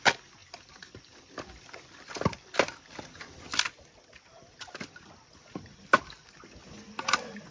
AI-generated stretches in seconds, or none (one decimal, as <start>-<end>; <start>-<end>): none

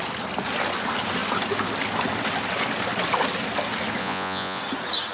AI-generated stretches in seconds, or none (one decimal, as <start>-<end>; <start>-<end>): 4.0-4.6

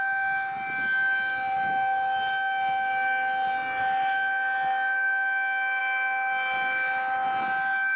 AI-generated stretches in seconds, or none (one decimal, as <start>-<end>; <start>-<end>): none